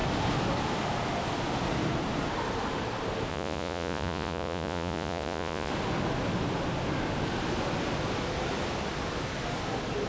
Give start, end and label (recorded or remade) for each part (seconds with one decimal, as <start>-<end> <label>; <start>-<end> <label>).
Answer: 0.0-3.3 recorded; 3.3-5.7 remade; 5.7-10.1 recorded